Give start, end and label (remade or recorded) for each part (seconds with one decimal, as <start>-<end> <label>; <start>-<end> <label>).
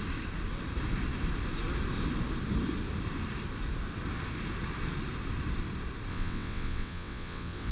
0.0-6.1 recorded; 6.1-7.7 remade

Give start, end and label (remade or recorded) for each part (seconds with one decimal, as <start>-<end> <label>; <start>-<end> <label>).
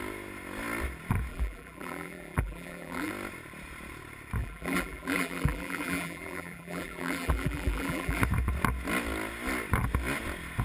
0.0-1.3 recorded; 1.3-3.1 remade; 3.1-4.4 recorded; 4.4-8.2 remade; 8.2-10.6 recorded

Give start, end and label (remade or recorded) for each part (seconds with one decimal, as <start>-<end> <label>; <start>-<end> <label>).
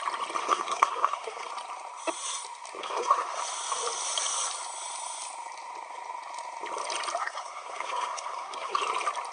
0.0-0.4 recorded; 0.4-1.5 remade; 1.5-2.8 recorded; 2.8-3.4 remade; 3.4-7.2 recorded; 7.2-8.8 remade; 8.8-9.3 recorded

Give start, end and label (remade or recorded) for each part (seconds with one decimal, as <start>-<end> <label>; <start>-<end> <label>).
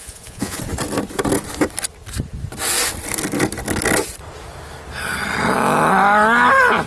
0.0-0.6 remade; 0.6-6.9 recorded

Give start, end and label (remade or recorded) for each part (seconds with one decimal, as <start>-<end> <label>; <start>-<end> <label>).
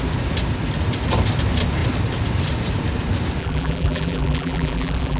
0.0-3.4 recorded; 3.4-5.2 remade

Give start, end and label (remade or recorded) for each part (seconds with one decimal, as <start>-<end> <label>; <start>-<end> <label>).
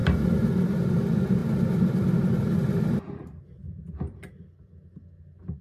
0.0-0.8 remade; 0.8-1.4 recorded; 1.4-4.7 remade; 4.7-5.6 recorded